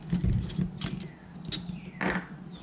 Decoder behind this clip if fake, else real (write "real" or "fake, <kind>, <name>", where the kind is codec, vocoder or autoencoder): real